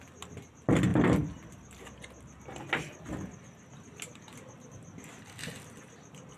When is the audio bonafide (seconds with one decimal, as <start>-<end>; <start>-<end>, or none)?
0.0-6.4